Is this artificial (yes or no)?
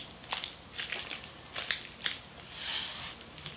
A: no